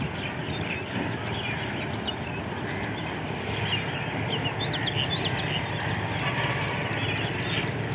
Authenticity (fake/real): real